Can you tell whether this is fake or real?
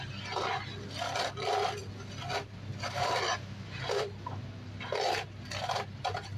real